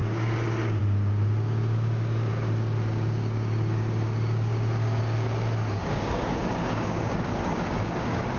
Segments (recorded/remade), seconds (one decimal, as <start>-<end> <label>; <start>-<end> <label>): 0.0-8.4 remade